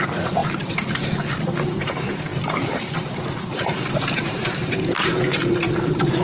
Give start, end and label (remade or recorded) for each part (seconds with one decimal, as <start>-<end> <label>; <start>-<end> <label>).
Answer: 0.0-6.2 remade